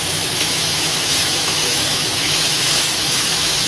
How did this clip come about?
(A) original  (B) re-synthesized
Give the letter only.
B